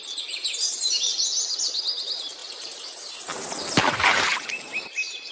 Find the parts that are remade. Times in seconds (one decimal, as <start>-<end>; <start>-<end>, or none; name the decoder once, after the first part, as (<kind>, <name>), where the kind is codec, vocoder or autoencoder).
0.0-1.1 (vocoder, BigVGAN v2); 2.0-5.3